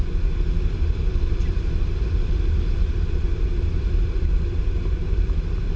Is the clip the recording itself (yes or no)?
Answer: yes